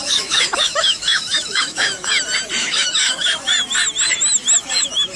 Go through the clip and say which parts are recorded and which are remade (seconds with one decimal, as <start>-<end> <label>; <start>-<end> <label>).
0.0-2.1 remade; 2.1-2.6 recorded; 2.6-3.5 remade; 3.5-4.6 recorded; 4.6-5.2 remade